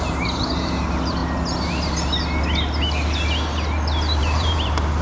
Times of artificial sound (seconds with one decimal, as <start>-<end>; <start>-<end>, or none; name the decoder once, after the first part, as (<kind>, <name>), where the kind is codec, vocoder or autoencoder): 0.0-1.2 (vocoder, BigVGAN v2); 4.2-5.0